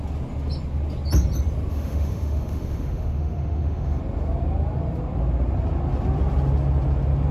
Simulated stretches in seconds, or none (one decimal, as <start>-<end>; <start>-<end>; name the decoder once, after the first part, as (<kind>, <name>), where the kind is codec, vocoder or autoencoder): 1.7-4.0 (autoencoder, DAC-VAE)